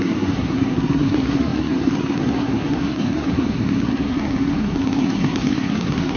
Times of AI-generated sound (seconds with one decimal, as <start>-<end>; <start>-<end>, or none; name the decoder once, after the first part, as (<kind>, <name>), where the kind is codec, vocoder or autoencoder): 0.0-6.2 (codec, SNAC)